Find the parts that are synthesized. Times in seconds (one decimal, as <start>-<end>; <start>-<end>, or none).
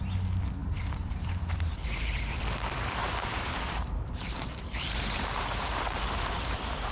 0.6-2.4; 3.0-6.9